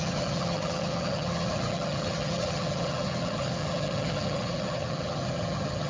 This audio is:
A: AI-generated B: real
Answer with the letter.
A